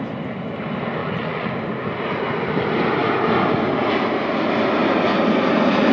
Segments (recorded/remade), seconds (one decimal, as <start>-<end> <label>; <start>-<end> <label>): 0.0-1.0 recorded; 1.0-1.5 remade; 1.5-5.9 recorded

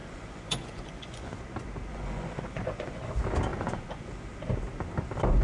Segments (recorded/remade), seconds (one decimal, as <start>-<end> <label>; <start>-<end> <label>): 0.0-1.4 remade; 1.4-1.9 recorded; 1.9-3.0 remade; 3.0-3.5 recorded; 3.5-4.1 remade; 4.1-5.4 recorded

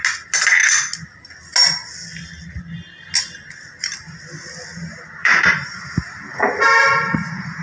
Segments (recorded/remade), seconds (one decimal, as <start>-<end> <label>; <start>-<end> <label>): 0.0-5.2 recorded; 5.2-5.8 remade; 5.8-7.6 recorded

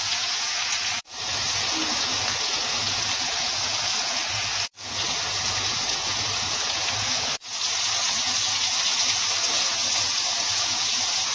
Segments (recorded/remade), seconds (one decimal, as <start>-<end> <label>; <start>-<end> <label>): 0.0-11.3 remade